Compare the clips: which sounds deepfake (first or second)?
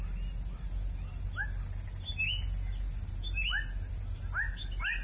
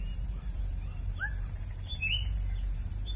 second